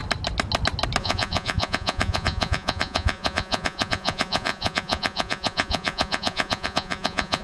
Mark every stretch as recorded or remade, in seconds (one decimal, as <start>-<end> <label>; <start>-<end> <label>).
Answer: 0.0-1.0 recorded; 1.0-7.4 remade